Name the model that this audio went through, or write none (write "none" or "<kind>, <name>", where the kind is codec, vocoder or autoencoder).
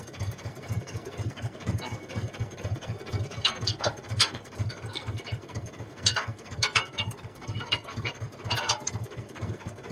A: codec, SNAC